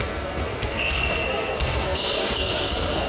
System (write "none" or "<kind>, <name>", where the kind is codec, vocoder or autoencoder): codec, SNAC